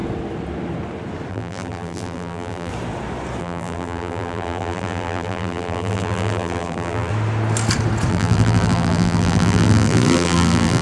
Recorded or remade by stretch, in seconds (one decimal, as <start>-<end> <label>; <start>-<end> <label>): 0.0-1.3 recorded; 1.3-2.7 remade; 2.7-3.4 recorded; 3.4-7.1 remade; 7.1-8.1 recorded; 8.1-10.8 remade